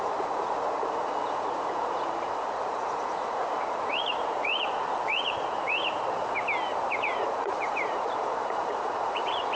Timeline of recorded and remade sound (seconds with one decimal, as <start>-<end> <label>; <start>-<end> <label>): 0.0-6.2 remade; 6.2-6.9 recorded; 6.9-9.6 remade